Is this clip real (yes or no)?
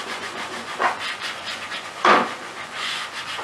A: no